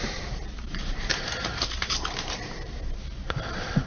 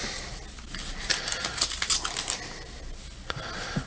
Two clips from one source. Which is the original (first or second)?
second